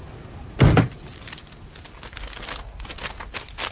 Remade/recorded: recorded